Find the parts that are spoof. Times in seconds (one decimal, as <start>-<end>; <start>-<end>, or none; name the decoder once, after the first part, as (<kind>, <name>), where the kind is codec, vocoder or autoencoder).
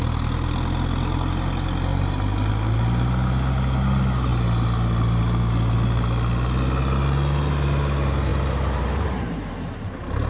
1.9-2.5 (vocoder, BigVGAN v2); 8.3-9.5